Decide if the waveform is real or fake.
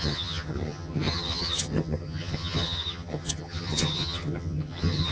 fake